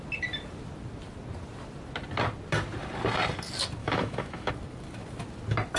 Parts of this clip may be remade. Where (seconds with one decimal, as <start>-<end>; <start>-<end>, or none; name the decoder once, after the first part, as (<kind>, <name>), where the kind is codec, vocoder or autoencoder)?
3.8-4.5 (autoencoder, DAC-VAE)